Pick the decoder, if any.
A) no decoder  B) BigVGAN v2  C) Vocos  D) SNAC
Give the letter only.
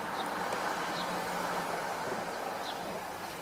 B